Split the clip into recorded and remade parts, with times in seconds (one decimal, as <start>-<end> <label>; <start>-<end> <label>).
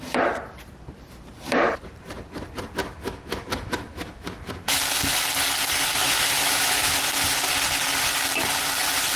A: 0.0-2.8 recorded; 2.8-4.8 remade; 4.8-6.0 recorded; 6.0-7.0 remade; 7.0-9.2 recorded